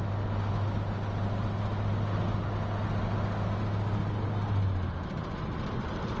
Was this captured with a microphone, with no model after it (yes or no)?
yes